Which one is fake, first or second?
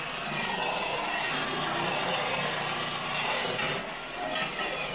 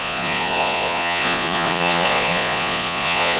second